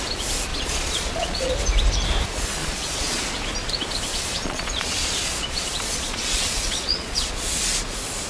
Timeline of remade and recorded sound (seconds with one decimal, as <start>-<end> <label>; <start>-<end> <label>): 0.0-0.5 recorded; 0.5-1.5 remade; 1.5-2.6 recorded; 2.6-3.2 remade; 3.2-4.1 recorded; 4.1-7.6 remade; 7.6-8.3 recorded